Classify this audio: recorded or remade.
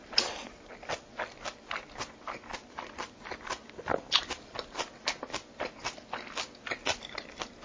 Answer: recorded